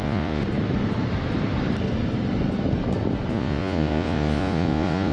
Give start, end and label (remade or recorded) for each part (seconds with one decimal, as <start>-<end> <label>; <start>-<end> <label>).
0.0-0.4 remade; 0.4-3.3 recorded; 3.3-5.1 remade